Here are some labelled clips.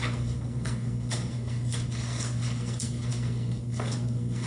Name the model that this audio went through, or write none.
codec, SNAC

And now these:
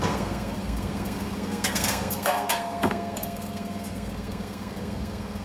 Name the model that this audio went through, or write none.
codec, SNAC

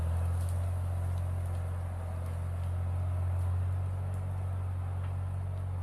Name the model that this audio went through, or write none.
none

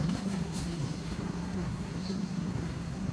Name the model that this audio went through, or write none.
codec, SNAC